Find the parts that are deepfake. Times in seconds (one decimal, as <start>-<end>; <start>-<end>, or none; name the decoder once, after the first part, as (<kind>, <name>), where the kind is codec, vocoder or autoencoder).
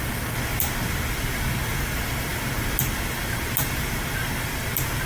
none